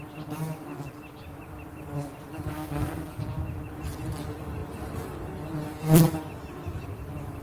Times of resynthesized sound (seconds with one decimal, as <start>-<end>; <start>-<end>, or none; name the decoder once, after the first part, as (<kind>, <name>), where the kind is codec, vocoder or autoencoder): 2.5-3.2 (codec, SNAC)